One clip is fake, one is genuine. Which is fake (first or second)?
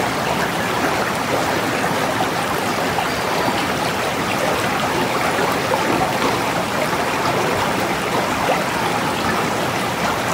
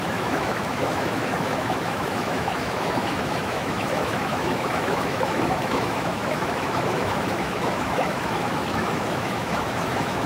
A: second